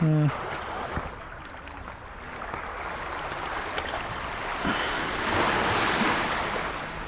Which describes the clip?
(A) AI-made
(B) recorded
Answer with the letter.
B